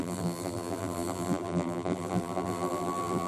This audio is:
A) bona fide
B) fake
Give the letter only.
B